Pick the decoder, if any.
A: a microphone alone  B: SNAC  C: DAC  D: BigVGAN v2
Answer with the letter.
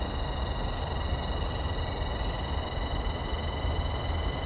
A